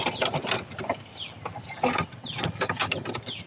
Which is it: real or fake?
real